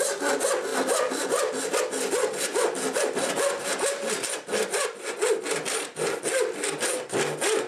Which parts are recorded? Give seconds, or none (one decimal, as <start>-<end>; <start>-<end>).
0.0-7.7

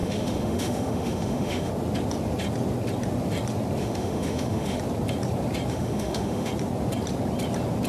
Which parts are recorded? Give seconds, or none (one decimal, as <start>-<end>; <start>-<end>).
1.7-3.8; 4.8-5.7; 6.5-7.9

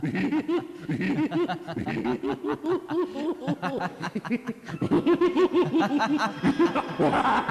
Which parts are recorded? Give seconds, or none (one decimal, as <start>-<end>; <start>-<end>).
0.0-3.9; 5.2-7.5